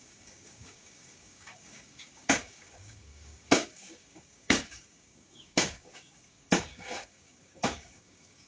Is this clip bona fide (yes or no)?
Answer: no